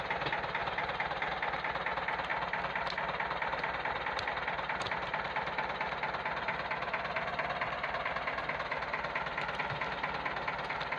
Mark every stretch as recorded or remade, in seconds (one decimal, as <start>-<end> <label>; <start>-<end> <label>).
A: 0.0-0.6 recorded; 0.6-1.3 remade; 1.3-11.0 recorded